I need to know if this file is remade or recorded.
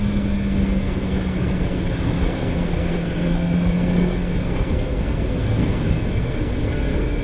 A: remade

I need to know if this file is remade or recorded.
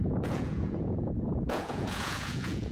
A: remade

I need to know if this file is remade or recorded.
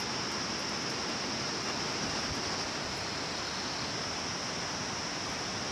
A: recorded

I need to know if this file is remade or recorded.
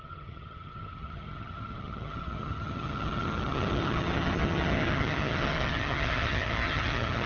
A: remade